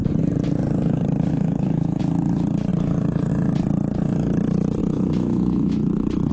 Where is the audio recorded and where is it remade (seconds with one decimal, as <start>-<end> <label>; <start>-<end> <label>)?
0.0-1.3 recorded; 1.3-2.0 remade; 2.0-4.8 recorded; 4.8-6.3 remade